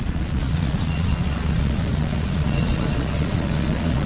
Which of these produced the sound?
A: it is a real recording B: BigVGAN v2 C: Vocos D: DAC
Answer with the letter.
C